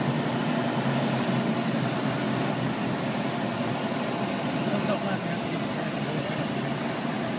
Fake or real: real